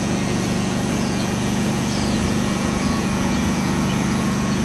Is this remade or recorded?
remade